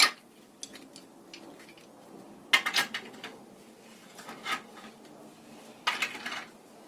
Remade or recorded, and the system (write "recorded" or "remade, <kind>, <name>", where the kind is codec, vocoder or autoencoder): recorded